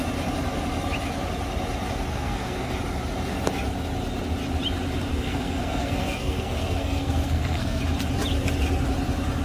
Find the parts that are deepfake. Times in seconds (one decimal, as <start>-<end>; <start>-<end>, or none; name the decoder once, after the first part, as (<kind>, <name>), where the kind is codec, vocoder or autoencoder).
2.1-2.7 (codec, SNAC); 5.1-7.8